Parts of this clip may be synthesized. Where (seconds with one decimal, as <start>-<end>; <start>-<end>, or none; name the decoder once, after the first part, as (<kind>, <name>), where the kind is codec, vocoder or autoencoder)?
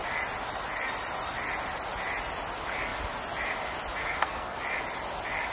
4.0-4.6 (codec, SNAC)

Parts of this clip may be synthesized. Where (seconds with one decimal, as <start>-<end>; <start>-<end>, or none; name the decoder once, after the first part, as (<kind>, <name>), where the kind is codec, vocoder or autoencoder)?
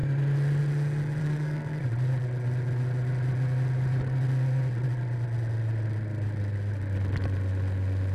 1.2-1.8 (codec, SNAC)